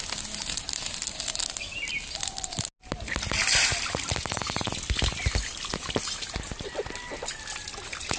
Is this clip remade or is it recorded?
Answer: recorded